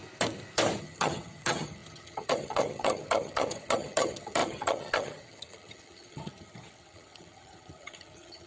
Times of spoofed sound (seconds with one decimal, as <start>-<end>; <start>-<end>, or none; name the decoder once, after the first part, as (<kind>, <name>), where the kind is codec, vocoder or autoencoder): 0.8-8.5 (vocoder, HiFi-GAN)